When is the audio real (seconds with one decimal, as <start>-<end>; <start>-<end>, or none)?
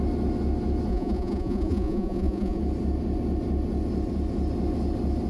0.0-0.9; 2.6-5.3